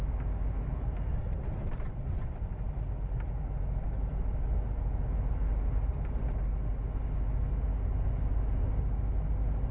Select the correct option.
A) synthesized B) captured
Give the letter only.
B